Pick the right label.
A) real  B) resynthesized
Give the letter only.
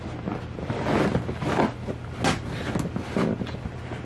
A